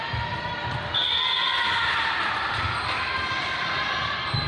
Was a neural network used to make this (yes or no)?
no